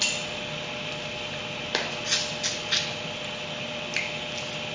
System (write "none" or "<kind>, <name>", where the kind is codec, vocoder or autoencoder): none